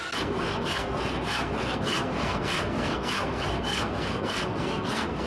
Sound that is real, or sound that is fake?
fake